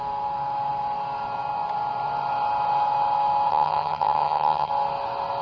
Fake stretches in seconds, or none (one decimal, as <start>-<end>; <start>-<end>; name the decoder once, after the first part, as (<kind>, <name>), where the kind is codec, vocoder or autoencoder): 3.5-4.7 (vocoder, HiFi-GAN)